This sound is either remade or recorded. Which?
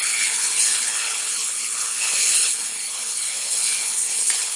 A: remade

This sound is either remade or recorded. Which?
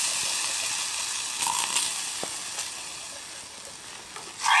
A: recorded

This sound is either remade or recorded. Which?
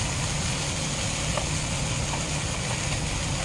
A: recorded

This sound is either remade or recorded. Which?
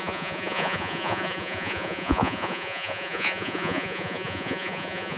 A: remade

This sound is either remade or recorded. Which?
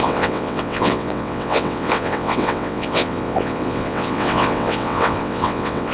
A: remade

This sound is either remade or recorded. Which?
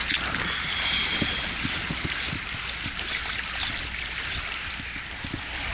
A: recorded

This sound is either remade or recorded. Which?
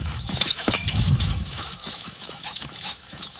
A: remade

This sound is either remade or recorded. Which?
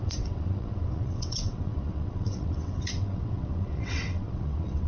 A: remade